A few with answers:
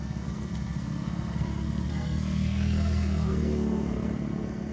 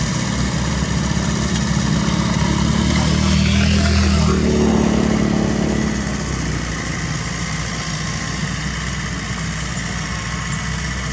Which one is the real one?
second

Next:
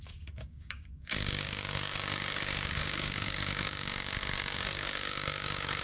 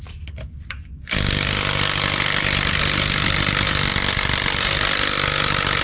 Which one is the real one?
second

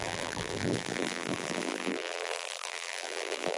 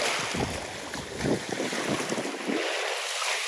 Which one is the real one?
second